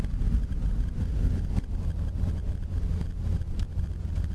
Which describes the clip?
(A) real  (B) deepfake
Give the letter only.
A